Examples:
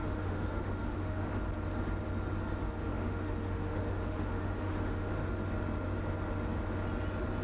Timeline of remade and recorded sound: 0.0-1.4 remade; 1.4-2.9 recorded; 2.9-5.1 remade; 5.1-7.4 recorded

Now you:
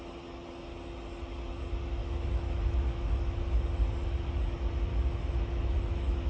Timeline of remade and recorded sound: 0.0-2.0 recorded; 2.0-3.6 remade; 3.6-4.9 recorded; 4.9-6.3 remade

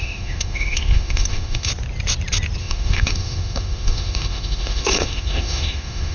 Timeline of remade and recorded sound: 0.0-1.7 remade; 1.7-2.6 recorded; 2.6-6.1 remade

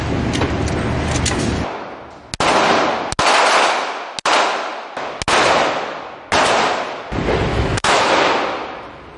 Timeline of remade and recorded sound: 0.0-7.5 recorded; 7.5-8.1 remade; 8.1-9.2 recorded

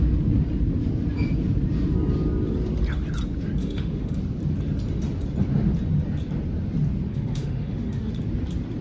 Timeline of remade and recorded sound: 0.0-3.6 recorded; 3.6-4.2 remade; 4.2-7.1 recorded; 7.1-8.1 remade; 8.1-8.8 recorded